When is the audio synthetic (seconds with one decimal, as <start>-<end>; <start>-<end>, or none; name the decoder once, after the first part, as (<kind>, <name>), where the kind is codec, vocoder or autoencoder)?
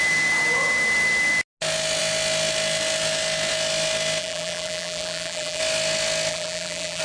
4.2-5.6 (vocoder, BigVGAN v2); 6.3-7.0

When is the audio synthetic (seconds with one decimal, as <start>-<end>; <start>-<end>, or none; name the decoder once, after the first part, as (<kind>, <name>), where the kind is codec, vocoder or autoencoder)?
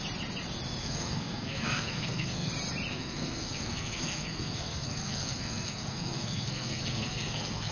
0.8-2.5 (codec, SNAC); 2.9-7.7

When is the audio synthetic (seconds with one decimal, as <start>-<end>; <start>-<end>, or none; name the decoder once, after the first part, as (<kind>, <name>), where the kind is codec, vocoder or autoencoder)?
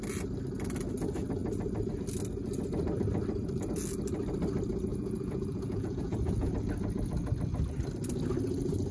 4.9-6.5 (vocoder, Vocos)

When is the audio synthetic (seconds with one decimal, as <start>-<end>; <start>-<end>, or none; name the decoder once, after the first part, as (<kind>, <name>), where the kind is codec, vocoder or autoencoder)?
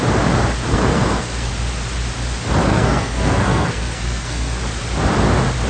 0.7-1.5 (codec, SNAC); 2.7-4.6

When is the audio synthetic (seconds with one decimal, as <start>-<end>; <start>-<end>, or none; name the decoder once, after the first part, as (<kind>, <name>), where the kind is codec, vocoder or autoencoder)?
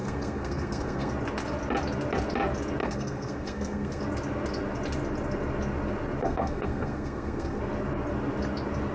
0.0-1.1 (codec, SNAC); 2.8-4.0; 6.2-7.6